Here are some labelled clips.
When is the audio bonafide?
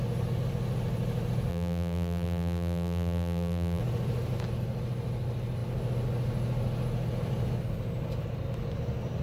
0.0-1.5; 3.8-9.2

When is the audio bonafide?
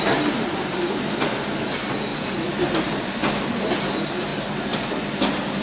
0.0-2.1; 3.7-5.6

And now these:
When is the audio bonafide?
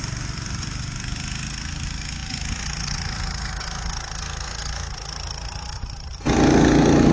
0.0-7.1